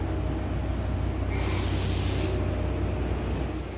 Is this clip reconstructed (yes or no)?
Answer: no